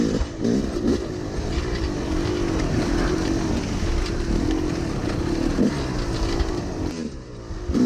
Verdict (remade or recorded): recorded